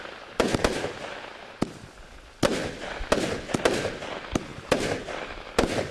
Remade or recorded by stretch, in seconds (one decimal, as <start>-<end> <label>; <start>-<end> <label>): 0.0-4.5 recorded; 4.5-5.0 remade; 5.0-5.9 recorded